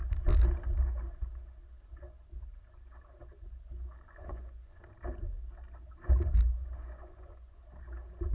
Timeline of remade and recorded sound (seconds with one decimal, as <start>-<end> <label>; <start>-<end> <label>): 0.0-4.2 recorded; 4.2-4.8 remade; 4.8-6.6 recorded; 6.6-7.6 remade; 7.6-8.3 recorded